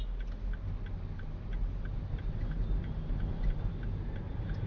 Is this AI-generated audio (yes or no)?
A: no